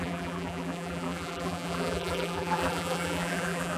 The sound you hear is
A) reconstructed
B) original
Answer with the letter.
A